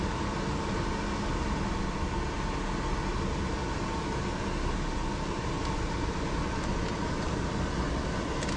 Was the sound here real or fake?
real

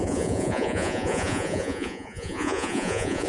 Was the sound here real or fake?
fake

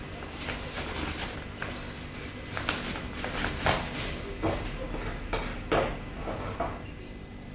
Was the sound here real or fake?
real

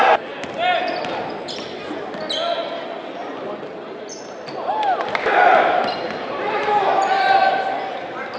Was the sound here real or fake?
real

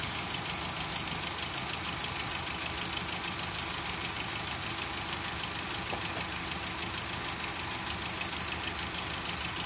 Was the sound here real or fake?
real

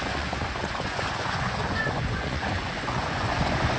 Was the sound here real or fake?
fake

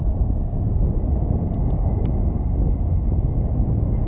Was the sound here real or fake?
real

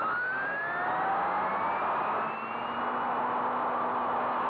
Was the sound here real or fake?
real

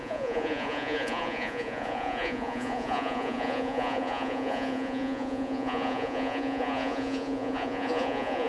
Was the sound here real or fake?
fake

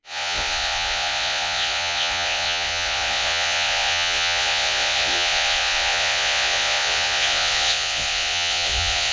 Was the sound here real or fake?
fake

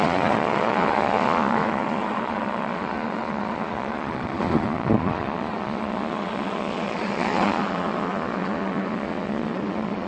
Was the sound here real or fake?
fake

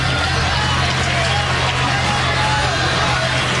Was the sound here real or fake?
real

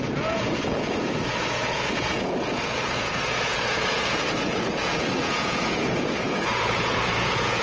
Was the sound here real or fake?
fake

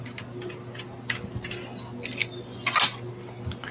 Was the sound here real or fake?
real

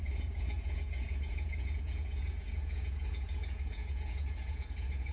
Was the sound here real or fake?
fake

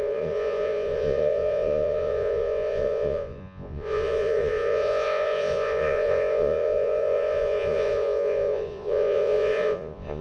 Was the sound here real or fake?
fake